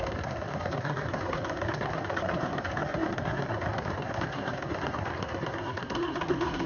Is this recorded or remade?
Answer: remade